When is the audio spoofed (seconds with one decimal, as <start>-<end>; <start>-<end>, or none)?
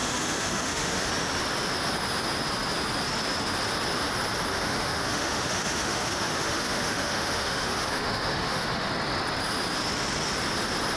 0.0-1.1; 4.5-8.9